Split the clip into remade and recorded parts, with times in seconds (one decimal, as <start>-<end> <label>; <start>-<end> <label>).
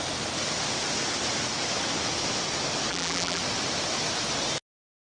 0.0-2.9 recorded; 2.9-3.4 remade; 3.4-5.2 recorded